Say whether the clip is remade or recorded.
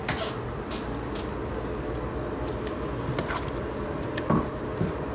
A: recorded